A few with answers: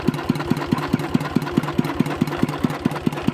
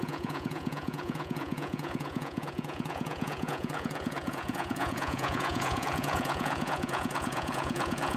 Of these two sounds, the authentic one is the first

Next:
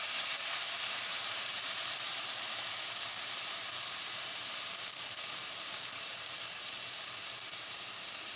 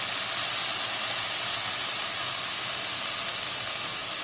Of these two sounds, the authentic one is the second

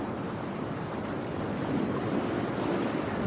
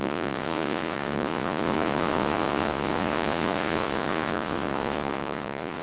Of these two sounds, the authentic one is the first